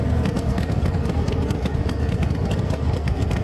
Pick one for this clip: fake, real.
fake